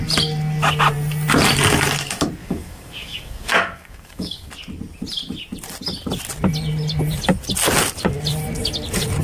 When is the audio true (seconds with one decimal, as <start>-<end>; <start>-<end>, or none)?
0.0-2.4; 4.5-9.2